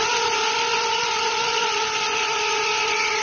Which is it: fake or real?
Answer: fake